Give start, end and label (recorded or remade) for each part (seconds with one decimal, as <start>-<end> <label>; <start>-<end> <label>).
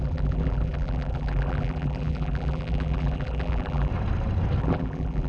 0.0-3.9 remade; 3.9-4.6 recorded; 4.6-5.3 remade